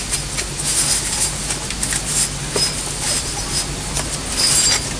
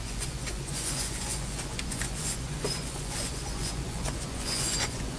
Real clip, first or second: first